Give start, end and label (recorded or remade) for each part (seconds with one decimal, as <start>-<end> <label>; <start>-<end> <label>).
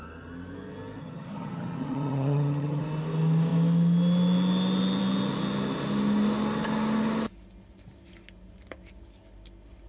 0.0-1.0 recorded; 1.0-2.8 remade; 2.8-9.9 recorded